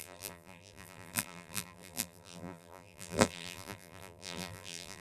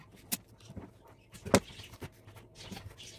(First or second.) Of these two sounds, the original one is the second